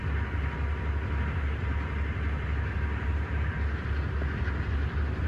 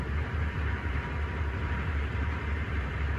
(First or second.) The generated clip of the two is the second